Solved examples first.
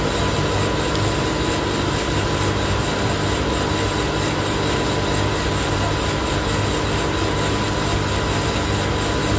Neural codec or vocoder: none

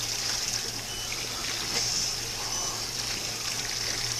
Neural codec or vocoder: none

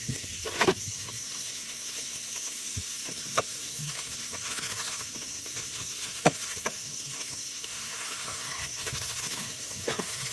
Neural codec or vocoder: codec, SNAC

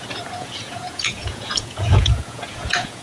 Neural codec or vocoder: vocoder, Vocos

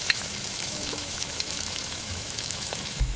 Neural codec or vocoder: autoencoder, DAC-VAE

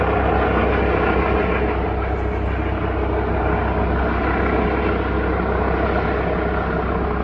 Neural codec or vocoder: none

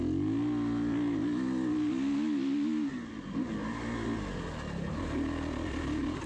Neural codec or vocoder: none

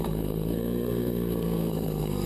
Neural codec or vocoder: codec, SNAC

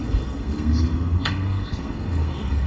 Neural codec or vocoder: codec, SNAC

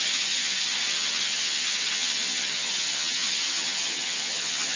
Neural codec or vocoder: vocoder, HiFi-GAN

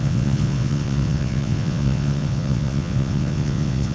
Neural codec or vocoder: vocoder, WaveNeXt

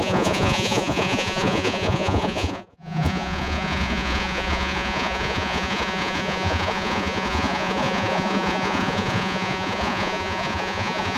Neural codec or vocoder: vocoder, Vocos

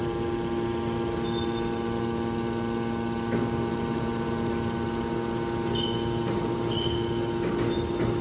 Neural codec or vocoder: none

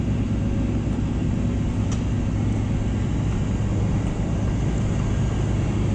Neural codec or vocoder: none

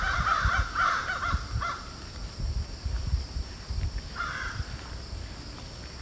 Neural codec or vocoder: none